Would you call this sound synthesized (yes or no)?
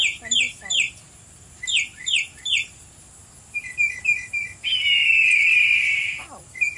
no